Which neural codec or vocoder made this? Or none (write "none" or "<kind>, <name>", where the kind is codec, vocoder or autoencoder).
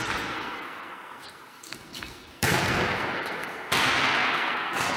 codec, SNAC